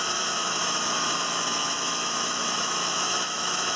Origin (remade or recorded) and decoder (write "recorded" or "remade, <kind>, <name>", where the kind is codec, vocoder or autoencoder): remade, autoencoder, DAC-VAE